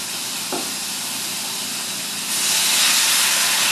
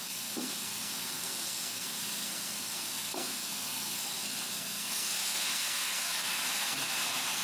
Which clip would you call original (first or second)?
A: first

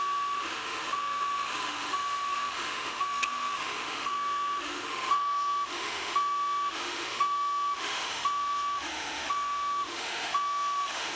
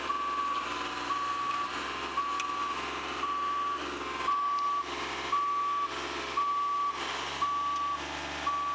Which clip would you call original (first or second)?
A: second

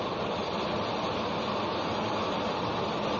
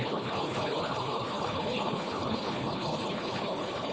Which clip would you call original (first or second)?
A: first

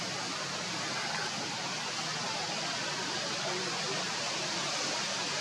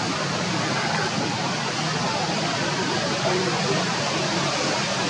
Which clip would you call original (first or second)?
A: first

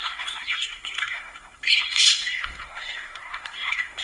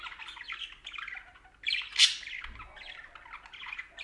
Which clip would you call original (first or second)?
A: second